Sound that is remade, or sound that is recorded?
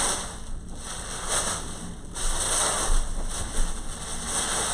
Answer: recorded